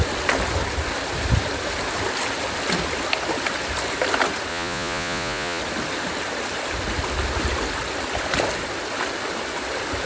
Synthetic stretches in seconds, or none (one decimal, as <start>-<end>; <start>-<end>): 4.5-5.6

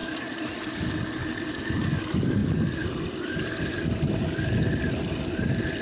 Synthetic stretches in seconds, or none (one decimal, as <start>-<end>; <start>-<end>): none

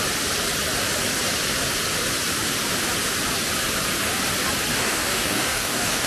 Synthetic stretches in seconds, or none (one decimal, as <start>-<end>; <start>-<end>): 4.7-6.1

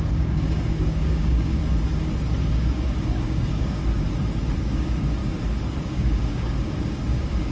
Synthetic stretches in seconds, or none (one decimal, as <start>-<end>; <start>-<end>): 0.0-1.6; 2.5-3.8; 4.6-5.2; 5.8-7.5

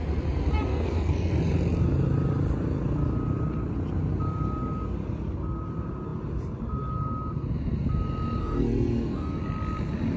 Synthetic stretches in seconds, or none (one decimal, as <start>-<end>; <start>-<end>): 0.7-1.3; 8.4-9.4